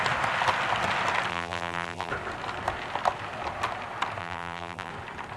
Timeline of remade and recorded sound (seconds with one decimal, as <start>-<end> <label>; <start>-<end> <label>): 0.0-1.3 recorded; 1.3-2.1 remade; 2.1-4.2 recorded; 4.2-4.9 remade; 4.9-5.4 recorded